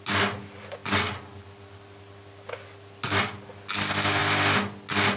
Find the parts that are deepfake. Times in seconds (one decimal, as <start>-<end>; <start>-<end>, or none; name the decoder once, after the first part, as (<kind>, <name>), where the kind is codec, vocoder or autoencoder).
none